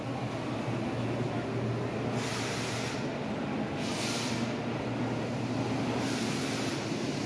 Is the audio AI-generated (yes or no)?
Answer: no